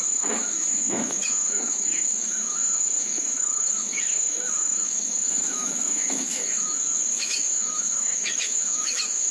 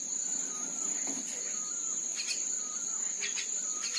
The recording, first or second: second